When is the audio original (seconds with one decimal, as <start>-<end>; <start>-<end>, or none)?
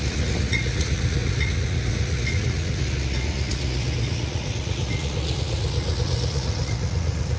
none